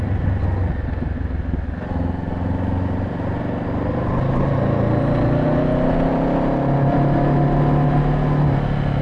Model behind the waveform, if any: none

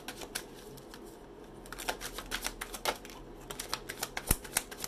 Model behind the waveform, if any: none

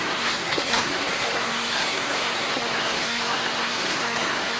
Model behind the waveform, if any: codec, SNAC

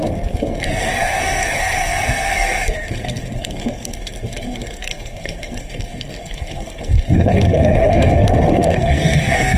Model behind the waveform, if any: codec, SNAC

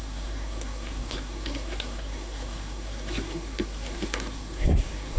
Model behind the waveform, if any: codec, SNAC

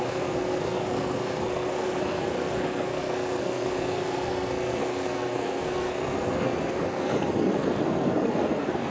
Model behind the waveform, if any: codec, SNAC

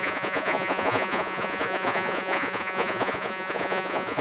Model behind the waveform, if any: vocoder, Vocos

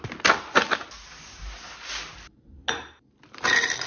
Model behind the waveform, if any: none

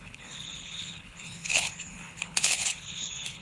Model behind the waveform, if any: codec, HILCodec